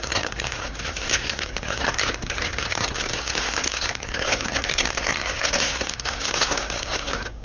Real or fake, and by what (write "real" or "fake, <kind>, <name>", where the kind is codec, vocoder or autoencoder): fake, codec, SNAC